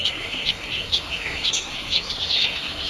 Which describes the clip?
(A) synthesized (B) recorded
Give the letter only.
A